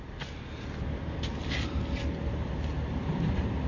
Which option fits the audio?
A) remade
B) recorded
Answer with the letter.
B